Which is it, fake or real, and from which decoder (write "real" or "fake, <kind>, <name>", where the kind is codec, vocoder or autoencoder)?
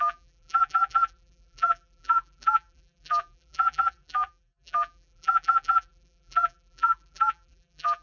fake, vocoder, BigVGAN v2